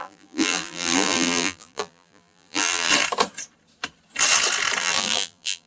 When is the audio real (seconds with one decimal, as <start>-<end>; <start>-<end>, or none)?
2.9-4.8